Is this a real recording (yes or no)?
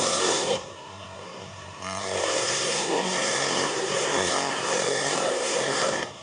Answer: no